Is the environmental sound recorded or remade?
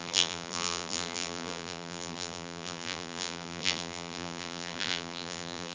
remade